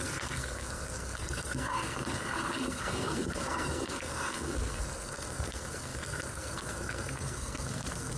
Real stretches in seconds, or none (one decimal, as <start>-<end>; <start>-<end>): none